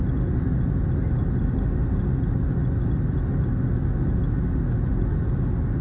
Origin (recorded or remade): recorded